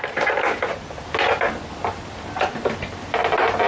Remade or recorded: recorded